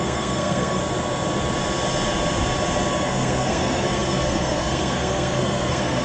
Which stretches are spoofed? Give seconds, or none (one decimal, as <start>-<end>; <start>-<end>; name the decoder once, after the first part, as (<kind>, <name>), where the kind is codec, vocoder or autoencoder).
0.0-0.8 (codec, SNAC); 2.9-6.0

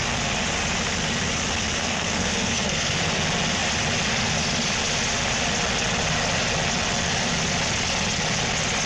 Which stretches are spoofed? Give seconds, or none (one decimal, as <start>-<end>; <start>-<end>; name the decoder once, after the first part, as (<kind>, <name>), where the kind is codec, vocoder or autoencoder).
1.8-2.9 (codec, SNAC)

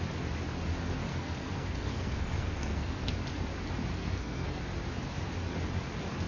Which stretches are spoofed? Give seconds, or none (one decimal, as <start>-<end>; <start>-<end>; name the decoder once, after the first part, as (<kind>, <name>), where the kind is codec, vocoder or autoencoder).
1.1-3.1 (codec, SNAC); 3.9-4.6

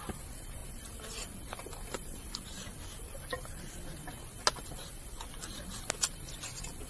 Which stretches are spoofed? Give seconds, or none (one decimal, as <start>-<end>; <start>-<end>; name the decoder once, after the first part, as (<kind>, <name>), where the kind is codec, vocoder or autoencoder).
none